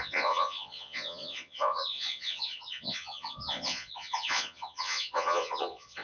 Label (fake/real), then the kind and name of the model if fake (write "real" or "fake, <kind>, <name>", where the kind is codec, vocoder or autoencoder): fake, vocoder, Vocos